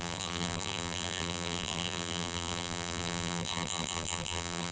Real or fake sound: fake